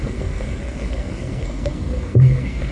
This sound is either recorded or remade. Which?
remade